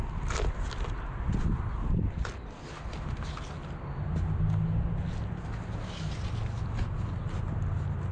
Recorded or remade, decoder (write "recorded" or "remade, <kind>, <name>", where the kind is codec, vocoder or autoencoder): recorded